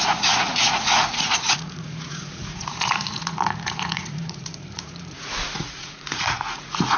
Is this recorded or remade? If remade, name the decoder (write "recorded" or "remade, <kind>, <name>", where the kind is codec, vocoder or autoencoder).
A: remade, vocoder, Vocos